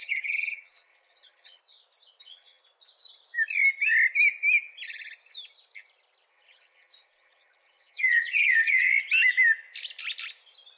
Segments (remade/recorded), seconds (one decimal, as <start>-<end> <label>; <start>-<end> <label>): 0.0-1.6 remade; 1.6-2.2 recorded; 2.2-2.6 remade; 2.6-6.3 recorded; 6.3-8.9 remade; 8.9-10.8 recorded